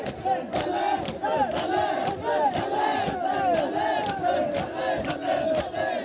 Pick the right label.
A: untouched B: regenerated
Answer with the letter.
A